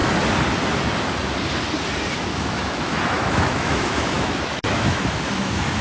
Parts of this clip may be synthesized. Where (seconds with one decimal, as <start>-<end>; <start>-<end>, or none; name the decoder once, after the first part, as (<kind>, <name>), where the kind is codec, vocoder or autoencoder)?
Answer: 2.3-5.8 (autoencoder, DAC-VAE)

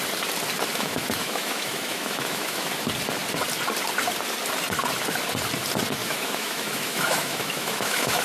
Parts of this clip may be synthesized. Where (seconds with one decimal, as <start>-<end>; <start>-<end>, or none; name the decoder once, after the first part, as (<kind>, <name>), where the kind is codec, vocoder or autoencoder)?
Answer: 0.7-2.7 (autoencoder, DAC-VAE); 6.0-8.2

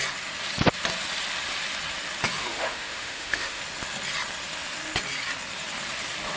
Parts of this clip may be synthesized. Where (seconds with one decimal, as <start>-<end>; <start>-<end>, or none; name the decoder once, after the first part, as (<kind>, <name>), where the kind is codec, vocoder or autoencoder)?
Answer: 2.4-3.6 (autoencoder, DAC-VAE)

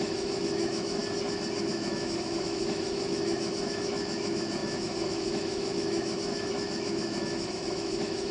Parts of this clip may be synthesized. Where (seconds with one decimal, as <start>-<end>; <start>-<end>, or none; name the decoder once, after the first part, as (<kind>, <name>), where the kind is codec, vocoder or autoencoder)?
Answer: 0.0-1.0 (autoencoder, DAC-VAE); 1.7-8.3

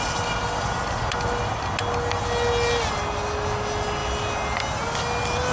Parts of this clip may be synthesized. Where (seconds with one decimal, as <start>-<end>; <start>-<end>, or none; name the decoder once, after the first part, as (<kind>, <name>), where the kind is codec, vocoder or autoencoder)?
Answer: none

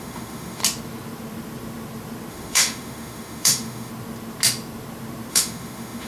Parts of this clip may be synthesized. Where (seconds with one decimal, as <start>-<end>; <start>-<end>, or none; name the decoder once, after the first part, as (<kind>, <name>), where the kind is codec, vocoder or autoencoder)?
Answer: 0.0-0.6 (autoencoder, DAC-VAE); 2.3-3.9; 5.3-6.1

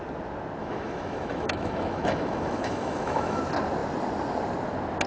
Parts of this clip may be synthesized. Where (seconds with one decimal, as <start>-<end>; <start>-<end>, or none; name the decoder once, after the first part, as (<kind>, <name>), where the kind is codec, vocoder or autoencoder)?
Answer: 0.6-3.4 (autoencoder, DAC-VAE)